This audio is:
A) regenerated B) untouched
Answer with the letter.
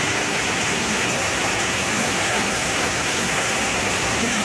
A